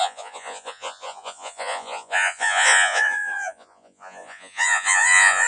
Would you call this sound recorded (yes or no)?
no